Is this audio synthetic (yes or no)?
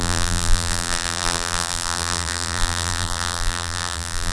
yes